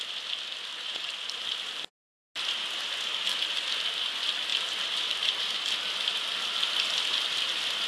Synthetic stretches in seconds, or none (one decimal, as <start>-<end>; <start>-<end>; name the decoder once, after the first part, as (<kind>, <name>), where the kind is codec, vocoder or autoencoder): none